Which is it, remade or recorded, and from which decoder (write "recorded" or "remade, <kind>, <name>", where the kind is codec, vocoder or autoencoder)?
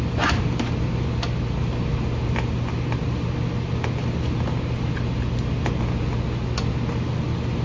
recorded